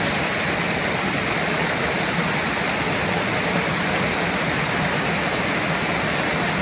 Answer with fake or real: real